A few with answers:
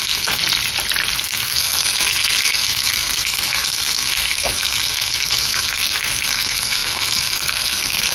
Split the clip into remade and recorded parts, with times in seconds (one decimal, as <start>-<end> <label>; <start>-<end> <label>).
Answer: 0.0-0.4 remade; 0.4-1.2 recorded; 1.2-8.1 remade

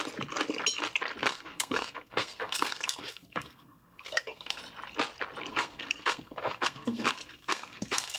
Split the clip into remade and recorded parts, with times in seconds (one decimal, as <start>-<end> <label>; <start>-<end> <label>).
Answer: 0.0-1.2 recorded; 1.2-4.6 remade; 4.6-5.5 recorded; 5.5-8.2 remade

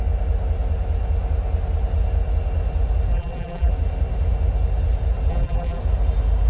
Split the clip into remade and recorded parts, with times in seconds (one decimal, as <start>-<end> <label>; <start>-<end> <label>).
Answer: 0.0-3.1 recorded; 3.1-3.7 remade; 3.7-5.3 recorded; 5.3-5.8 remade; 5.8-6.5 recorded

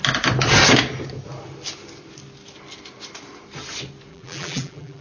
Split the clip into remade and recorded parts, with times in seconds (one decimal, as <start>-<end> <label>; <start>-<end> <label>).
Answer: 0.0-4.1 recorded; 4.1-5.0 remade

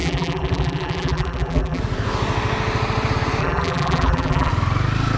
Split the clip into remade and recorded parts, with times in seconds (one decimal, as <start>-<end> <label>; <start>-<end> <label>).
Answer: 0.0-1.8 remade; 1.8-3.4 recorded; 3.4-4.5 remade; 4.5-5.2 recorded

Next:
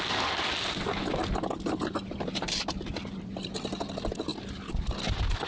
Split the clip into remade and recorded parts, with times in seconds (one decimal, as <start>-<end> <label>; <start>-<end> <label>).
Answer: 0.0-5.5 recorded